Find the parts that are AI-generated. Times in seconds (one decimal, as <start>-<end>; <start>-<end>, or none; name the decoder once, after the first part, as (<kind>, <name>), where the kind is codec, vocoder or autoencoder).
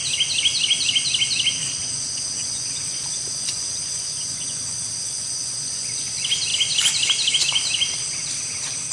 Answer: 1.8-6.1 (vocoder, Vocos)